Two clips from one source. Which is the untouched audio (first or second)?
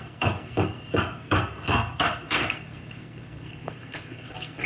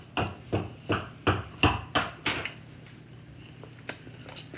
second